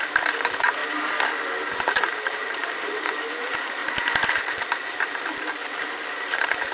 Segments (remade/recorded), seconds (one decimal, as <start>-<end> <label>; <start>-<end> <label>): 0.0-0.8 remade; 0.8-1.7 recorded; 1.7-5.3 remade; 5.3-6.1 recorded; 6.1-6.7 remade